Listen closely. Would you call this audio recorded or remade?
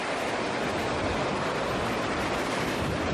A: recorded